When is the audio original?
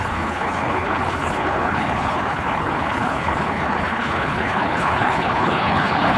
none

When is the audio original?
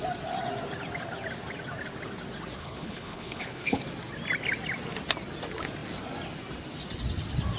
0.0-2.6; 3.8-7.6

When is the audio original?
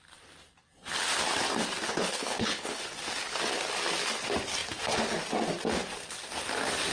0.0-1.9; 2.8-6.9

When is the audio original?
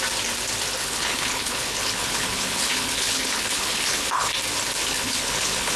0.0-0.8; 4.3-4.8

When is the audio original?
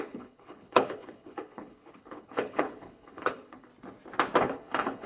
3.7-4.4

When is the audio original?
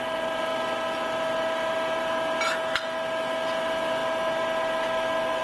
0.0-5.4